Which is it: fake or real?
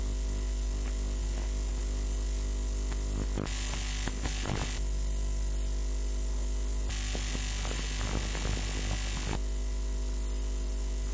real